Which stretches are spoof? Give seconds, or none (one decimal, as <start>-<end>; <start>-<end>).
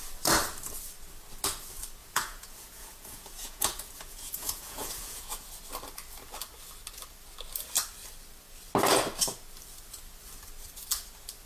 2.0-5.5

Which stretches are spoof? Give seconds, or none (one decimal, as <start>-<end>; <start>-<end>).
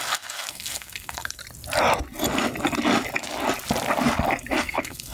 0.0-1.4; 4.5-5.1